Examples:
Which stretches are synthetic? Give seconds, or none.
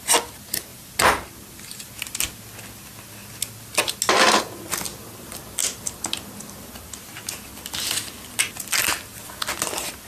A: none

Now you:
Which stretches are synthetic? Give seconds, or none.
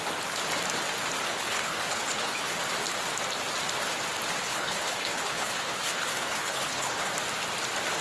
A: 1.3-2.5 (codec, HILCodec); 4.4-7.1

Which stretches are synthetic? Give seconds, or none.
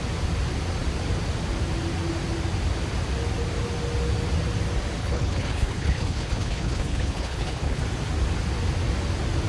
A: 5.0-7.8 (codec, HILCodec)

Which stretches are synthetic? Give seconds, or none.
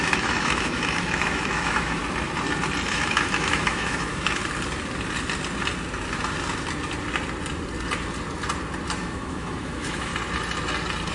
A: 0.0-2.0 (autoencoder, DAC-VAE); 2.9-4.4; 9.0-10.1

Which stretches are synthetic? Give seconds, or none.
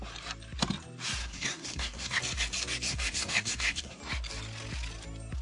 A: 1.2-2.2 (codec, SNAC); 2.9-4.0